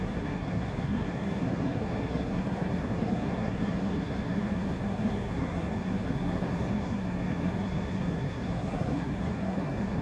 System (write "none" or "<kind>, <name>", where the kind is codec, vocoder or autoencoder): codec, SNAC